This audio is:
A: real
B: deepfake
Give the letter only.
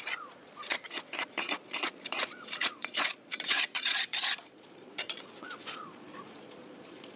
B